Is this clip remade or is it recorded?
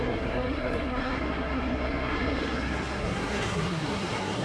remade